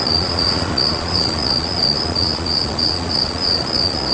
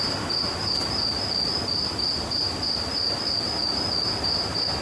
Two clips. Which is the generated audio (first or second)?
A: first